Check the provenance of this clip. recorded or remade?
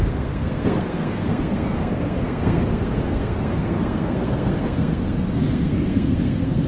remade